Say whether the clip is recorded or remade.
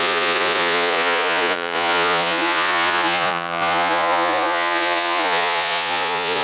remade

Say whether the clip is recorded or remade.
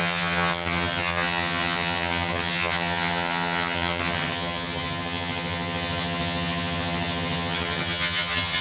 remade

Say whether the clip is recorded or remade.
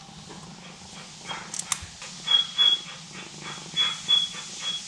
recorded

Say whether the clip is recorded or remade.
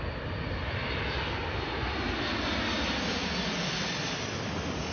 recorded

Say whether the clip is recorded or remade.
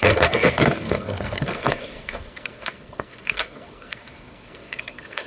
remade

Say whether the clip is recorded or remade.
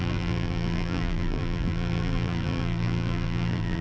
remade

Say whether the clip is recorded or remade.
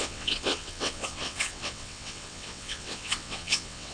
remade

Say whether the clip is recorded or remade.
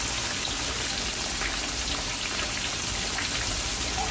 recorded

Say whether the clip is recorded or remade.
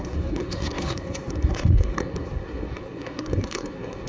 remade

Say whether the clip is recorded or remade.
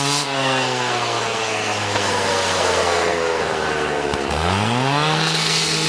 remade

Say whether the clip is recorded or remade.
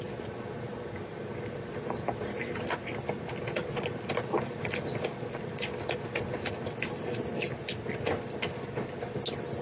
recorded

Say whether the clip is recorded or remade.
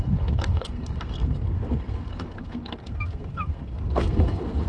remade